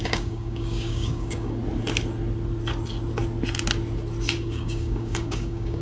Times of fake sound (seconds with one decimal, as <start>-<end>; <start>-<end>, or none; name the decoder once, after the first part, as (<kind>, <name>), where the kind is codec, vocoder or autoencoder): 0.0-1.6 (codec, DAC); 4.4-5.8